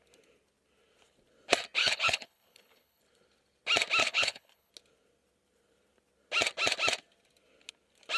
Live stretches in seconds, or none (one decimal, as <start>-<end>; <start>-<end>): 0.0-1.8; 3.0-4.0; 4.7-8.2

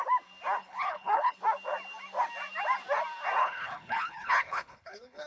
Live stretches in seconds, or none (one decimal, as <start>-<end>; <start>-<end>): 0.0-0.6; 1.4-3.4

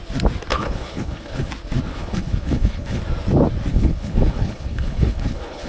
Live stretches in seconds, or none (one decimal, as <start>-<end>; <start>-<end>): 0.0-0.5; 1.5-1.9; 3.0-3.7

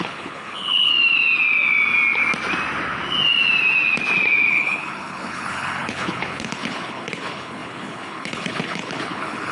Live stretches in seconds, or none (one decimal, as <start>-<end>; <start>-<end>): 0.9-4.5